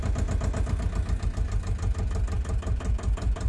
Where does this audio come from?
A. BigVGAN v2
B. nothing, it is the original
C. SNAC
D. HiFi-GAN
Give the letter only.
B